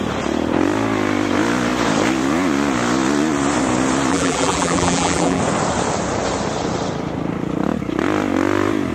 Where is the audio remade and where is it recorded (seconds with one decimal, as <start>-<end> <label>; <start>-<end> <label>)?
0.0-4.1 recorded; 4.1-5.4 remade; 5.4-8.9 recorded